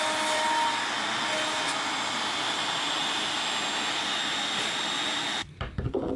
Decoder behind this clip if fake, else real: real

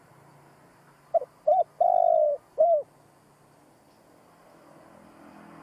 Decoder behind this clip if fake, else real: real